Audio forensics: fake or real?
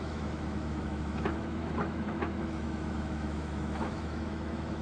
fake